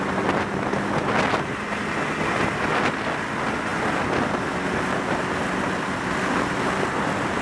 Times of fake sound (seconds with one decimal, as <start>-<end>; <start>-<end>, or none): none

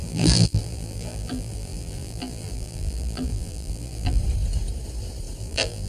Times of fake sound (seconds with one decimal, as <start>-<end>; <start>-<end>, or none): 0.0-4.2; 5.4-5.9

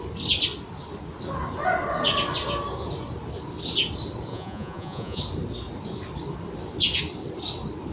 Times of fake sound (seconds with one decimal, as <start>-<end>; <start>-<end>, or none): 4.3-5.2